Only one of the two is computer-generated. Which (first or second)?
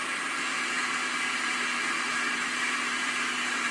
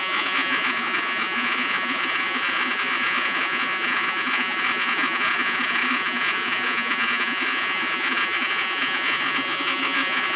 second